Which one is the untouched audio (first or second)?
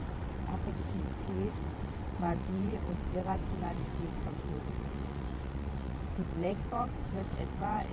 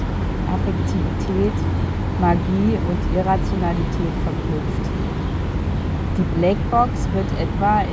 second